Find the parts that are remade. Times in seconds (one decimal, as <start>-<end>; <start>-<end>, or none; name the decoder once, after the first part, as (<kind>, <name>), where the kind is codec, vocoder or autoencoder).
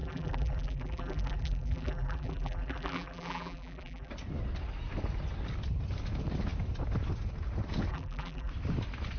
0.0-4.1 (vocoder, BigVGAN v2); 7.9-8.5